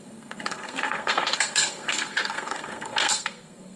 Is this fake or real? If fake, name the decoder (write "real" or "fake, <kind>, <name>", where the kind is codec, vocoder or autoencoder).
fake, codec, SNAC